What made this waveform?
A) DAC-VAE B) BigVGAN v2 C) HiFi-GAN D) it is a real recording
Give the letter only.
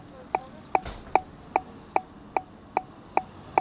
D